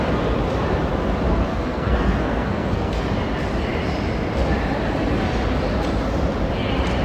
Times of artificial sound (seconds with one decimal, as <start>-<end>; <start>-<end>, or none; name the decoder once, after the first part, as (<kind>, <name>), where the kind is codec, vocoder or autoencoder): 1.5-3.0 (codec, SNAC)